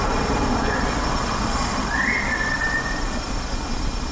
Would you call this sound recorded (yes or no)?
no